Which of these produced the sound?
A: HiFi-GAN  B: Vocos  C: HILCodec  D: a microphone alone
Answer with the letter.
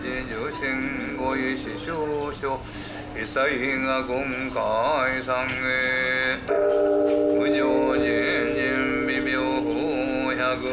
D